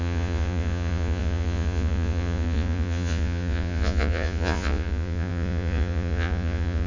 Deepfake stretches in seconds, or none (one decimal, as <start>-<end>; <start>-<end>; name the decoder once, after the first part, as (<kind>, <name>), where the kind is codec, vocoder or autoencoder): 0.0-6.9 (vocoder, Vocos)